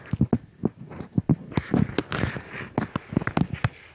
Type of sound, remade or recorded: recorded